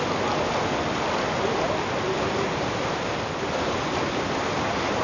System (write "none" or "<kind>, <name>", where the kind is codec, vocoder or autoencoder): none